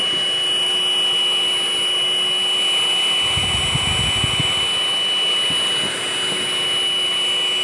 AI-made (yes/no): no